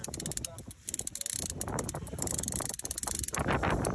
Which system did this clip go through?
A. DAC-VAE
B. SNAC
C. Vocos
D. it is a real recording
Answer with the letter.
D